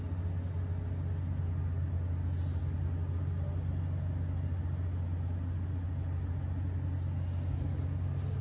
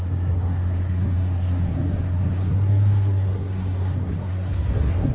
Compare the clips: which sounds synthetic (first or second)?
second